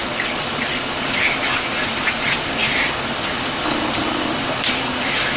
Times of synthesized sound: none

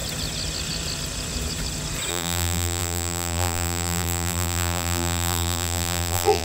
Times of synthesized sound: 2.1-6.4

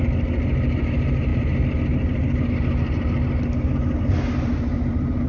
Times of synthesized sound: none

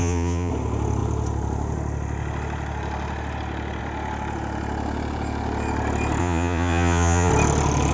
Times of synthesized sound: 0.0-0.5; 6.2-7.3